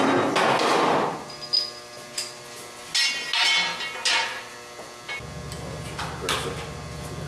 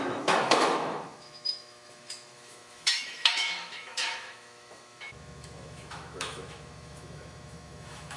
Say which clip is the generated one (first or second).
second